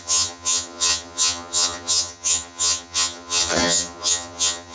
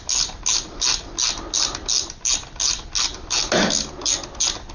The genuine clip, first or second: second